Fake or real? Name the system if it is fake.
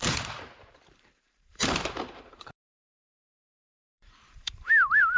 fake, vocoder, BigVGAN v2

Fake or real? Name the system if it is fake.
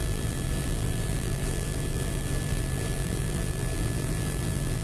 fake, vocoder, BigVGAN v2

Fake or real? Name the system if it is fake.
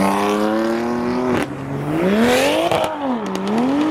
real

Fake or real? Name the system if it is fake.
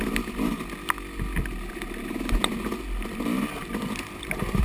real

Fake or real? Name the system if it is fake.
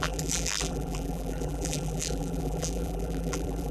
fake, vocoder, BigVGAN v2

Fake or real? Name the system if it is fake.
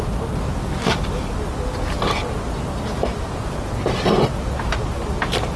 real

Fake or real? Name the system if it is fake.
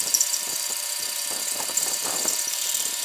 fake, vocoder, BigVGAN v2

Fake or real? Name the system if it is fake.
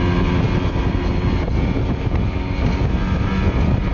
real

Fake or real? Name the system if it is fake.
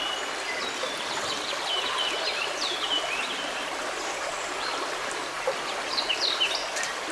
fake, vocoder, BigVGAN v2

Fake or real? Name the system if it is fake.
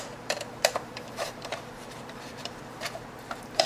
fake, vocoder, BigVGAN v2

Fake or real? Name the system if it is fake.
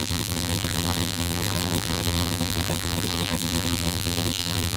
fake, vocoder, BigVGAN v2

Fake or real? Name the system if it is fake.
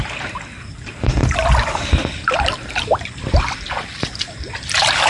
fake, vocoder, BigVGAN v2